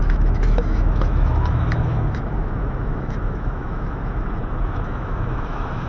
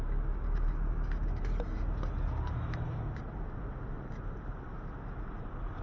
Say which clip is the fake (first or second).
first